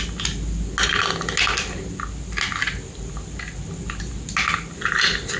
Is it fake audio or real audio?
real